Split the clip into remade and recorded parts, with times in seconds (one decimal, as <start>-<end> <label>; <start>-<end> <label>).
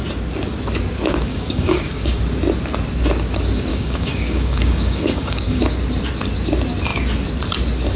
0.0-1.3 recorded; 1.3-2.2 remade; 2.2-3.7 recorded; 3.7-5.6 remade; 5.6-8.0 recorded